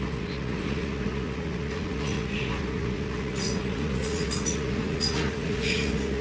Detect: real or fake fake